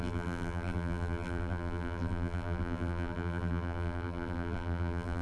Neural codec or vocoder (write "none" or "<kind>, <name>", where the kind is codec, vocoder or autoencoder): vocoder, BigVGAN v2